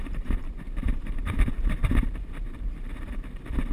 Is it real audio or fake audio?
fake